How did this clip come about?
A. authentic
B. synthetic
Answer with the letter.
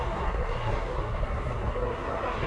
B